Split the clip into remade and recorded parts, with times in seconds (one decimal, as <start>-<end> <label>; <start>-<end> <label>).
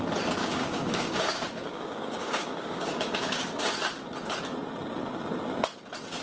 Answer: 0.0-0.4 recorded; 0.4-3.6 remade; 3.6-6.2 recorded